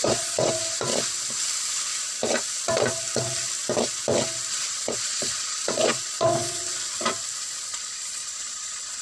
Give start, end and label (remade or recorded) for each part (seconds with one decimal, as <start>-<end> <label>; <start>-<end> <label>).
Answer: 0.0-0.6 remade; 0.6-4.5 recorded; 4.5-6.6 remade; 6.6-7.7 recorded; 7.7-9.0 remade